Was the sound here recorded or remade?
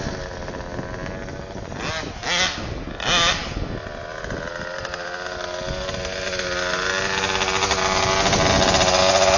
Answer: recorded